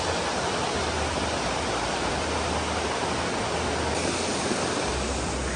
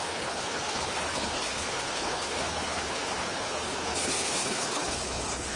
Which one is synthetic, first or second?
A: second